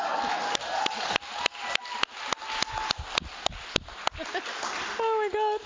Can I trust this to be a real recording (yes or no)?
yes